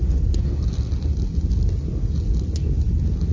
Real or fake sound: real